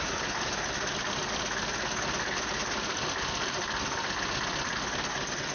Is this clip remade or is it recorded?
recorded